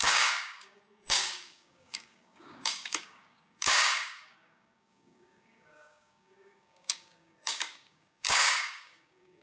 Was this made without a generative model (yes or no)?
no